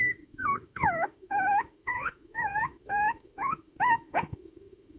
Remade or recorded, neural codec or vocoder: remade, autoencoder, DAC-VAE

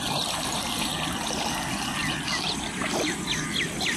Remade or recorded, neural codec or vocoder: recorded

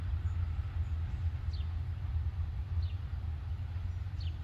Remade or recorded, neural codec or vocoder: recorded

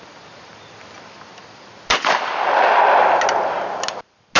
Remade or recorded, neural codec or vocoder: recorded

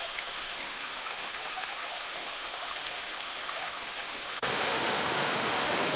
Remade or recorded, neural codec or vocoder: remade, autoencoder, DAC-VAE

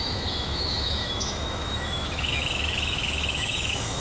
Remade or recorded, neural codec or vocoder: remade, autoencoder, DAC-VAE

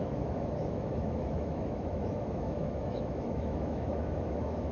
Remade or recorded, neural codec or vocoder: remade, autoencoder, DAC-VAE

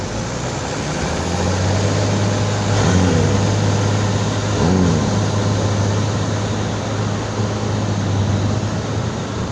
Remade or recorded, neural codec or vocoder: recorded